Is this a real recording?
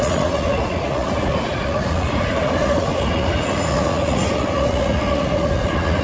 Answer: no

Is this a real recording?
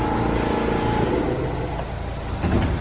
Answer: yes